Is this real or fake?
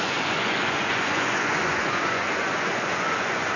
fake